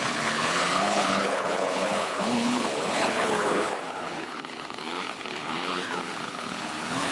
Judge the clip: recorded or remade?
remade